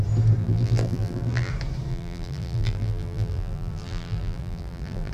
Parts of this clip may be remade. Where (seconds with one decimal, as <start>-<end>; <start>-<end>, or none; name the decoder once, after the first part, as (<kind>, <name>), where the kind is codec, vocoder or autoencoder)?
0.4-1.5 (vocoder, BigVGAN v2); 1.9-5.1